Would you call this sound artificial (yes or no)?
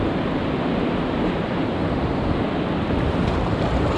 no